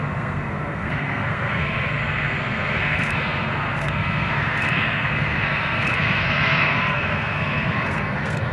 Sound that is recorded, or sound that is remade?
remade